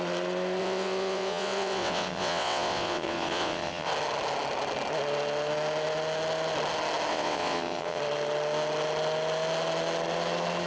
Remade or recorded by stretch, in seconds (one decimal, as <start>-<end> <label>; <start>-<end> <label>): 0.0-0.6 recorded; 0.6-3.9 remade; 3.9-7.1 recorded; 7.1-8.0 remade; 8.0-10.7 recorded